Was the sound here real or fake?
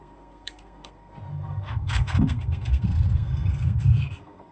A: fake